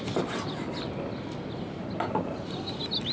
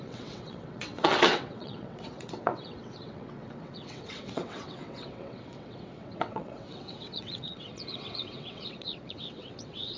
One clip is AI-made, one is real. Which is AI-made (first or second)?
second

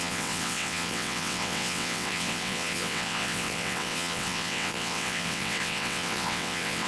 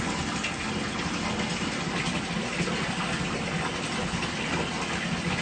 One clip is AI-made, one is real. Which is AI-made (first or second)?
first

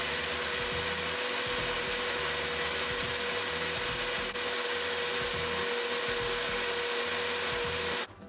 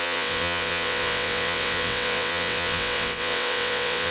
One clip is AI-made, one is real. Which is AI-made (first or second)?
second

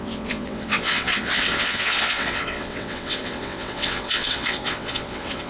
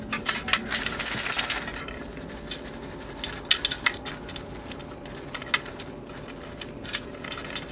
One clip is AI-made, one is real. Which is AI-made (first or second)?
first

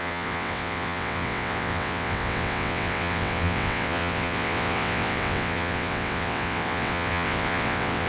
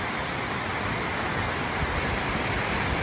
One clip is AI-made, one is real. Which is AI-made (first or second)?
first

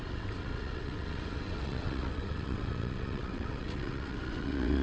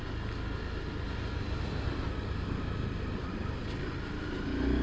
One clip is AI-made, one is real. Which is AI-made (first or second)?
first